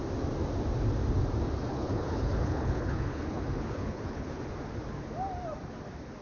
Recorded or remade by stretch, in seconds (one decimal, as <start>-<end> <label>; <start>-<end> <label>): 0.0-1.7 recorded; 1.7-4.4 remade; 4.4-6.2 recorded